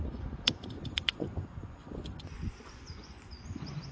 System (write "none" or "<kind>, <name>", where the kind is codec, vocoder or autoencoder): vocoder, Vocos